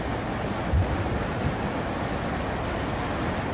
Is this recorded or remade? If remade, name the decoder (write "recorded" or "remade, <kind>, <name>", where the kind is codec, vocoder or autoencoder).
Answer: recorded